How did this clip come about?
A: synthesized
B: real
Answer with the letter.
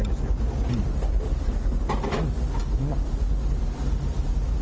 B